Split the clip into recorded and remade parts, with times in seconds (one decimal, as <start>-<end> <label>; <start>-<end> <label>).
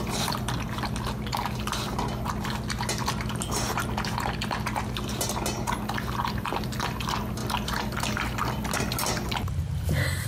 0.0-10.3 recorded